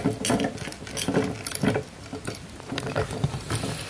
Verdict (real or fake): real